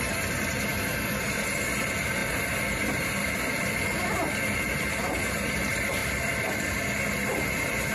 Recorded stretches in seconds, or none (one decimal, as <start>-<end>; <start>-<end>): 6.0-7.1